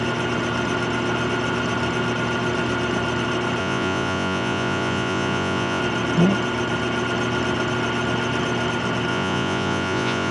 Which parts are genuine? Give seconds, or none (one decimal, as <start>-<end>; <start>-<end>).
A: 0.0-3.6; 5.8-9.1